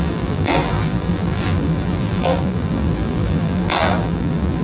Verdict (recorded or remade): remade